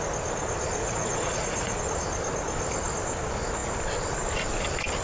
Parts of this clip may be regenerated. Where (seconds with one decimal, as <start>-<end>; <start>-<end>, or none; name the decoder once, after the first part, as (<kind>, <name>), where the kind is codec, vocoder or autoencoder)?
0.8-1.8 (vocoder, Vocos)